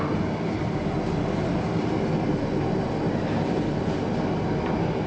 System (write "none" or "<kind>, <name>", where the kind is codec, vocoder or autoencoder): none